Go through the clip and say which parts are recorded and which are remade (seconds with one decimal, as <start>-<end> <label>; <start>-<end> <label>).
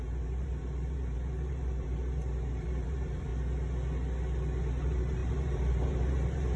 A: 0.0-3.3 remade; 3.3-4.8 recorded; 4.8-6.6 remade